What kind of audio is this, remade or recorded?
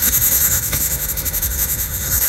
remade